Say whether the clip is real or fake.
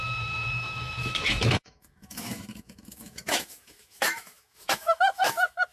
fake